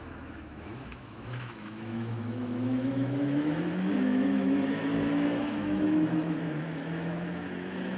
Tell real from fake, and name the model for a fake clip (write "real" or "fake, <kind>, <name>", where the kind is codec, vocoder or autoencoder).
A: fake, autoencoder, DAC-VAE